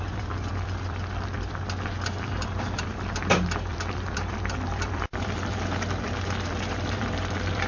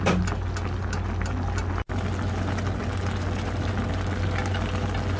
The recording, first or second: second